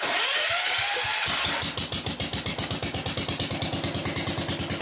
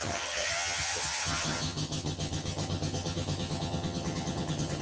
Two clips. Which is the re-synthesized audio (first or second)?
second